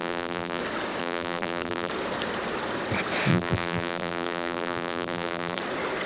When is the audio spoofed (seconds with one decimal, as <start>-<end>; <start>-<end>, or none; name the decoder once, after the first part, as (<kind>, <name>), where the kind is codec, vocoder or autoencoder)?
0.0-0.6 (vocoder, BigVGAN v2); 1.0-1.9; 3.3-5.6